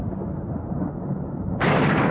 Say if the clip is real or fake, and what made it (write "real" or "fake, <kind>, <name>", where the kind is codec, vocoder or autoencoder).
real